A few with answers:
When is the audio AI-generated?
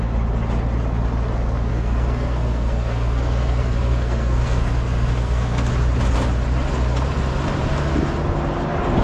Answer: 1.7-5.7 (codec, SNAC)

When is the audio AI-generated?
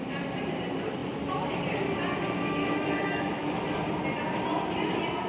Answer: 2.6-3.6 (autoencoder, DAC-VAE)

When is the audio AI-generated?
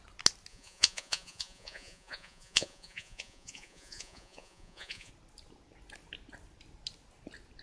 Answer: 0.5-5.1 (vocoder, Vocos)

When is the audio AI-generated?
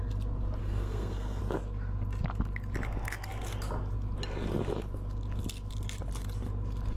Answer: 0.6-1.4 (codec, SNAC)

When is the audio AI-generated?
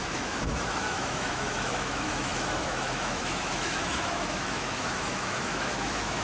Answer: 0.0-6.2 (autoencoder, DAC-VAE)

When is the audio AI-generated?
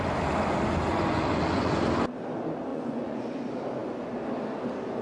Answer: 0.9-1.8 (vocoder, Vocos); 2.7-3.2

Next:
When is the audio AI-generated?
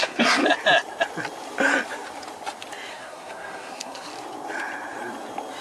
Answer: 0.0-0.4 (codec, SNAC); 2.9-4.1